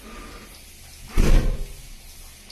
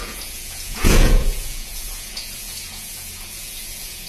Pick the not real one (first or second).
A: second